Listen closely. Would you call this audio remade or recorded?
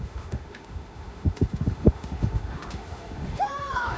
remade